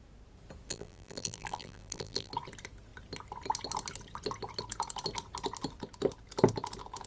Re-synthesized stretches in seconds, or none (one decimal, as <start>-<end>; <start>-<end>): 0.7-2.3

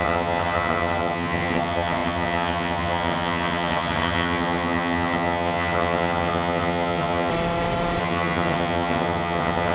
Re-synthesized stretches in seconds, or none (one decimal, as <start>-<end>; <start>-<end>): 0.0-7.3; 8.0-9.7

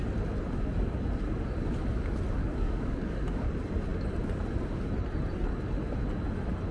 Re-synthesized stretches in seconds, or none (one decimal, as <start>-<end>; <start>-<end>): 2.4-3.5

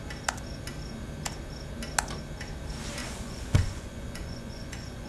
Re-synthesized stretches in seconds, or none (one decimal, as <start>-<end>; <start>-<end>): 3.0-5.1

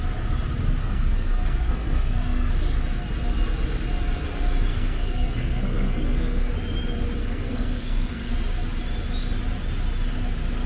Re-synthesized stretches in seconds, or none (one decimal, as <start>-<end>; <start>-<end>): 0.8-2.5; 4.7-6.5; 7.2-8.3

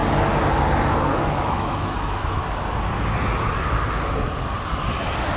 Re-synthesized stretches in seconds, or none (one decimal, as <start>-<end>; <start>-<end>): 1.2-2.4